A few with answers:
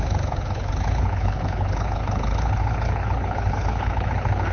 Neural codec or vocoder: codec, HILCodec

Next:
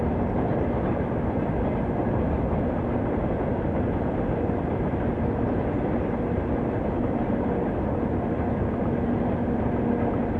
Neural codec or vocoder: none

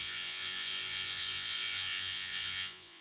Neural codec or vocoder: vocoder, Vocos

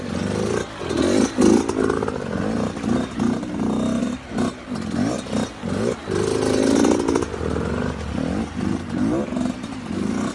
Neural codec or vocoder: none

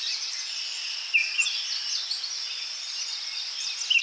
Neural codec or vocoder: none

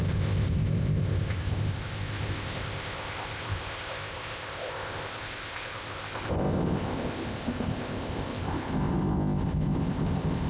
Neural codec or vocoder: codec, ZipCodec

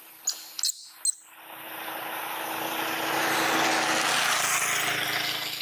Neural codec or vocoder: none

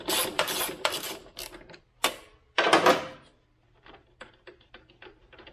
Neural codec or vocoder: none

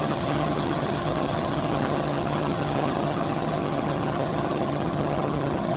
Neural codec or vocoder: vocoder, HiFi-GAN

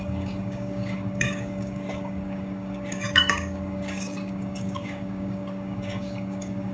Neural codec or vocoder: codec, DAC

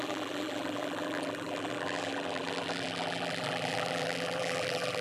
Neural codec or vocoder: vocoder, BigVGAN v2